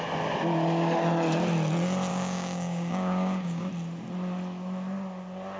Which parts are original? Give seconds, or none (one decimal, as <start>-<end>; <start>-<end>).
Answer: 0.0-2.1; 3.7-5.6